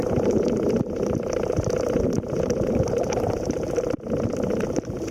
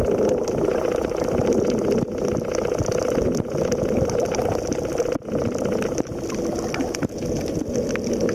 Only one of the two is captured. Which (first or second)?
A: second